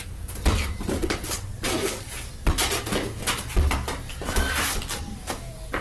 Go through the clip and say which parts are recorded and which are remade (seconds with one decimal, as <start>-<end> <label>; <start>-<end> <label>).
0.0-5.8 recorded